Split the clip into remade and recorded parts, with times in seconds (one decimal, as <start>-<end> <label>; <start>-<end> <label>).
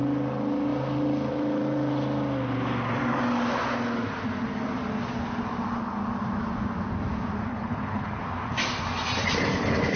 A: 0.0-7.5 recorded; 7.5-8.2 remade; 8.2-10.0 recorded